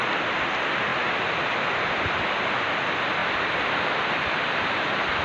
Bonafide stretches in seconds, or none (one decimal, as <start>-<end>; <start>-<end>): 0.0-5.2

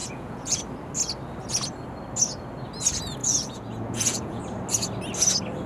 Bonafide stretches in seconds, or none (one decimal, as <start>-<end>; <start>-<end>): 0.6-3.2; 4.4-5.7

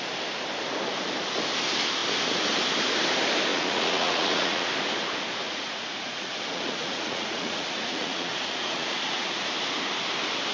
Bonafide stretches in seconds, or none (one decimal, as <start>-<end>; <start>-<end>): 0.0-3.5; 4.7-5.4; 9.4-10.5

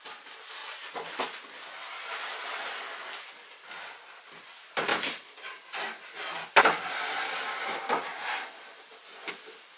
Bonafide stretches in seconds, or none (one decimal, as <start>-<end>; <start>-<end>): 0.0-9.8